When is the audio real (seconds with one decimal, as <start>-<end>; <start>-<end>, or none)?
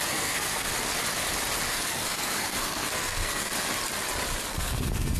0.7-1.7; 3.5-4.5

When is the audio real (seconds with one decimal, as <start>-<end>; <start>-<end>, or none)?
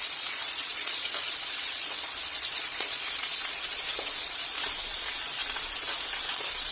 none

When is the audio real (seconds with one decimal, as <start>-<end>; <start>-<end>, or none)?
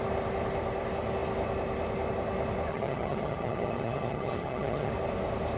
0.0-2.7; 4.9-5.6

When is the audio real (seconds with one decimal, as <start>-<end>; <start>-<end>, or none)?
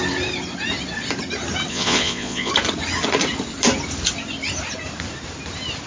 0.0-1.7; 2.5-5.9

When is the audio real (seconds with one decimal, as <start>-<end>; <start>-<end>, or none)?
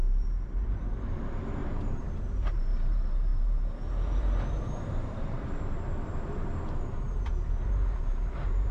none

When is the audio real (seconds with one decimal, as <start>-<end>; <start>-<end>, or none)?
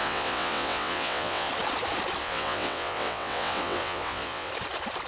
1.5-2.2; 4.5-5.1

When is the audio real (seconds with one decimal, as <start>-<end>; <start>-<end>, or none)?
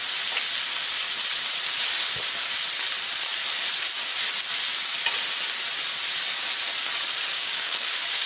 0.0-7.3